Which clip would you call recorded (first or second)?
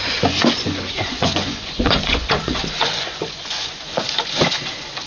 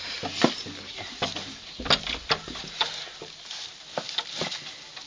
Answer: second